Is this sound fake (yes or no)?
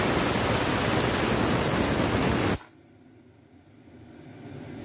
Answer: no